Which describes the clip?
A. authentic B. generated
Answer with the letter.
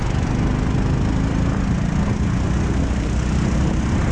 A